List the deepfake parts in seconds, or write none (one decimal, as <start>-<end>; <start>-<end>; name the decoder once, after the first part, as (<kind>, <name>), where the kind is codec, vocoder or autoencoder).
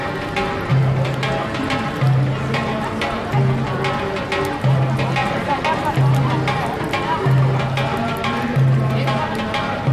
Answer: none